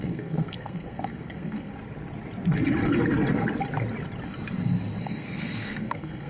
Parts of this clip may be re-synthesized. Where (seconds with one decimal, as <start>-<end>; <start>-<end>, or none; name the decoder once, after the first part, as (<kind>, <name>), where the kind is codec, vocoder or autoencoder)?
0.0-1.7 (codec, SNAC); 5.0-6.3

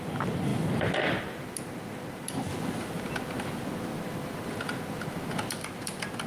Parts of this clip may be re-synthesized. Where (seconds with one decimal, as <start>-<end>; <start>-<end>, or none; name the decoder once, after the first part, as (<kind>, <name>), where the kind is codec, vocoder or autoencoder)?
none